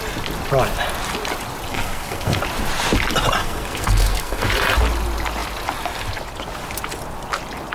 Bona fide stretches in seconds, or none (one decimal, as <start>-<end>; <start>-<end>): 0.0-1.7; 2.4-3.4; 4.5-7.7